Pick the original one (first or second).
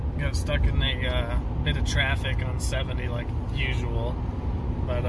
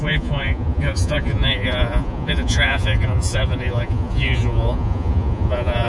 first